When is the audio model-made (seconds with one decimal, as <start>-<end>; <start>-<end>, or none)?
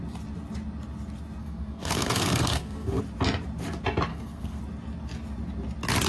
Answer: 1.4-3.0; 4.1-4.6